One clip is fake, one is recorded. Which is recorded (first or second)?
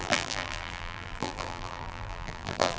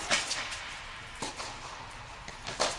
second